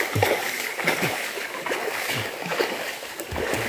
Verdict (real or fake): fake